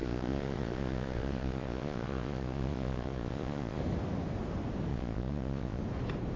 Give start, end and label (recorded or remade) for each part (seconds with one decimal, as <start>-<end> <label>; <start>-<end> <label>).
0.0-3.8 remade; 3.8-4.9 recorded; 4.9-5.8 remade; 5.8-6.4 recorded

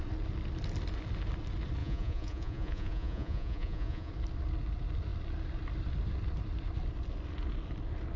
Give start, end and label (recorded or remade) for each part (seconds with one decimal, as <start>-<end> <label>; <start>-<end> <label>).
0.0-1.8 recorded; 1.8-4.1 remade; 4.1-8.2 recorded

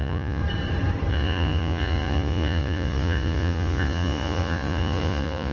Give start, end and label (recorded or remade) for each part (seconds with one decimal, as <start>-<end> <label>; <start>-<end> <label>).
0.0-0.4 remade; 0.4-1.1 recorded; 1.1-5.5 remade